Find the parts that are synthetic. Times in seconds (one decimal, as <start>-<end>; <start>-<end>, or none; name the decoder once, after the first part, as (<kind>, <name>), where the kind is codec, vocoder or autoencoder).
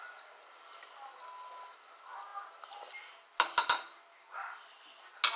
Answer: none